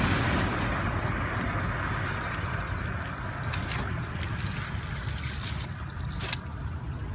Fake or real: real